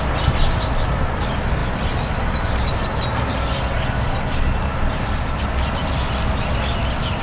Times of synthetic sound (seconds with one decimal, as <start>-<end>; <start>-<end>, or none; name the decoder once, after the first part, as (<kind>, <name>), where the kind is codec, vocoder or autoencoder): none